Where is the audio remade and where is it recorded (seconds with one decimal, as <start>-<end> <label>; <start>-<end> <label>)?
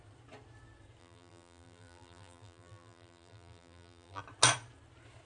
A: 0.0-1.0 recorded; 1.0-4.2 remade; 4.2-5.3 recorded